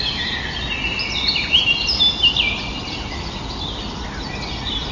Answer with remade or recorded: recorded